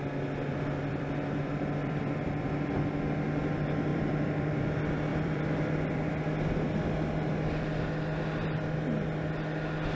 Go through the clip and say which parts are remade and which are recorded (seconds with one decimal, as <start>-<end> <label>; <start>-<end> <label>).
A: 0.0-0.5 recorded; 0.5-2.7 remade; 2.7-3.9 recorded; 3.9-4.6 remade; 4.6-5.1 recorded; 5.1-6.1 remade; 6.1-9.9 recorded

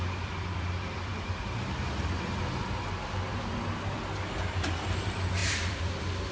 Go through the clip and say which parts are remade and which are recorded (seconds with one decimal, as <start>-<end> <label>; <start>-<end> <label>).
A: 0.0-1.1 remade; 1.1-3.0 recorded; 3.0-6.3 remade

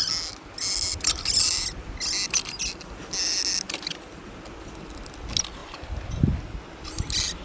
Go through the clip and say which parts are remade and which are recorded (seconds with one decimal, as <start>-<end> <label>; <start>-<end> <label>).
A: 0.0-0.9 recorded; 0.9-2.0 remade; 2.0-7.4 recorded